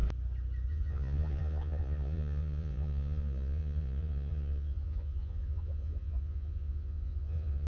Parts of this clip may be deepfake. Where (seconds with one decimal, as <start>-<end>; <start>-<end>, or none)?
0.7-7.7